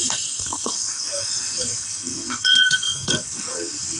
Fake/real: fake